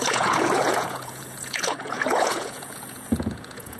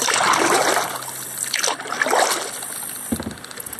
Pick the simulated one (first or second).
first